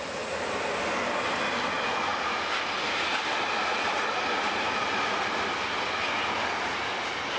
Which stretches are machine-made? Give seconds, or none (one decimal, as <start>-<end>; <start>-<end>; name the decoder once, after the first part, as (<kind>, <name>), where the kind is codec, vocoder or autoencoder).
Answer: none